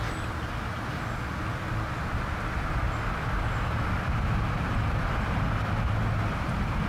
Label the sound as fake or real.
real